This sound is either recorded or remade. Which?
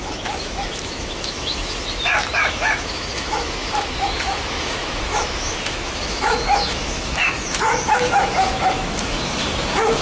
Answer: remade